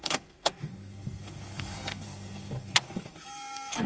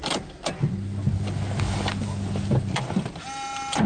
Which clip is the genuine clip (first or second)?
second